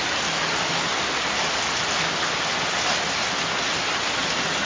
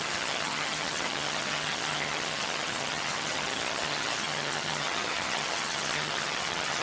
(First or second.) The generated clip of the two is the second